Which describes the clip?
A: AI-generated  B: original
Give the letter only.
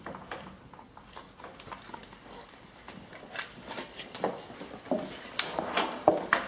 B